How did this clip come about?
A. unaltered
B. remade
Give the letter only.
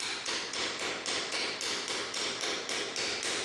A